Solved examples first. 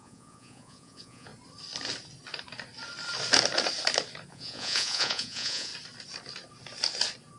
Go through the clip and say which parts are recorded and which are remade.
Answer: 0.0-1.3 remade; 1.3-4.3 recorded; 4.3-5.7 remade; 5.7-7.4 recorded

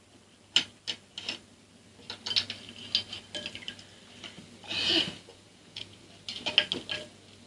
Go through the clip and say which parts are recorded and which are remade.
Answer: 0.0-5.3 recorded; 5.3-6.0 remade; 6.0-7.5 recorded

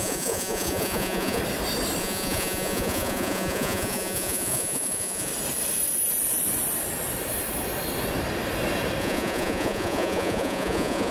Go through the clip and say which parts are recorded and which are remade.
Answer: 0.0-1.4 remade; 1.4-2.0 recorded; 2.0-5.3 remade; 5.3-9.0 recorded; 9.0-11.1 remade

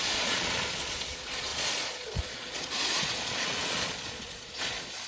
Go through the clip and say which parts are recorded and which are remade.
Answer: 0.0-5.1 remade